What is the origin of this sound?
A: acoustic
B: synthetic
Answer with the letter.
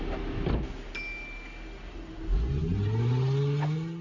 A